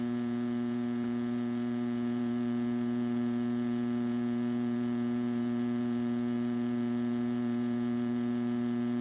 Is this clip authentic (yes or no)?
no